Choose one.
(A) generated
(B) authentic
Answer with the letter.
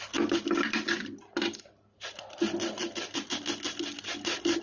B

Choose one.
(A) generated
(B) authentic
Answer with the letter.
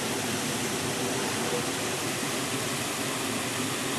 B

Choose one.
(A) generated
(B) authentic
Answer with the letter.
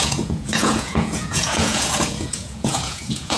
A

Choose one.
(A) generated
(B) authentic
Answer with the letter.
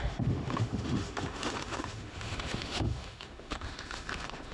A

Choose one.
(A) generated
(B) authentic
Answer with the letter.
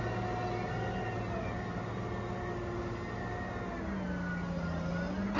B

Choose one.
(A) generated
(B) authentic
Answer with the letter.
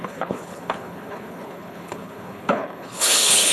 A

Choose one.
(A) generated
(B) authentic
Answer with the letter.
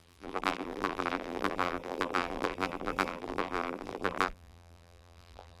A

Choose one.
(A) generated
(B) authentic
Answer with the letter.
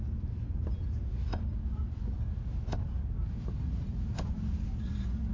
B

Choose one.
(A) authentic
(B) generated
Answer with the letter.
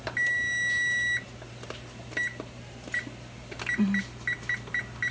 A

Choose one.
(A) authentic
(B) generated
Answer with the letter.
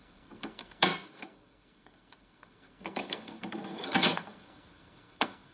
B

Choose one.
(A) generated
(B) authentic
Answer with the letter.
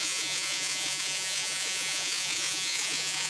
A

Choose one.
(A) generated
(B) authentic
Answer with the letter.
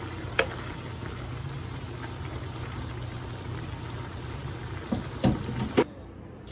B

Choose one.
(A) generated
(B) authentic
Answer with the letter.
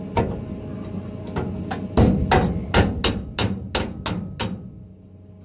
B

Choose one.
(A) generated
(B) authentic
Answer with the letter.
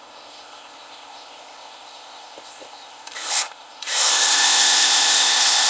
A